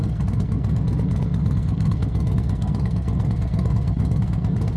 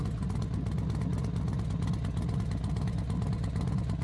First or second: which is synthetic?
first